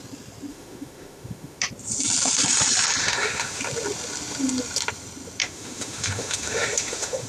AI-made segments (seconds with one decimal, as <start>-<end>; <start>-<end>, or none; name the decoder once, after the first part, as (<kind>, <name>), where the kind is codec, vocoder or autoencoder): 0.5-1.6 (autoencoder, DAC-VAE); 3.0-3.6; 5.4-7.3